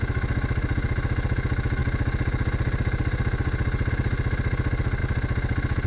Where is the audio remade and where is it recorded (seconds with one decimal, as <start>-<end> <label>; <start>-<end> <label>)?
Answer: 0.0-5.9 recorded